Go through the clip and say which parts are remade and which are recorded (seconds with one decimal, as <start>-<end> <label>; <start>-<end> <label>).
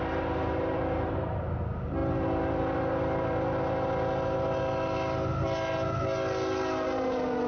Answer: 0.0-7.5 recorded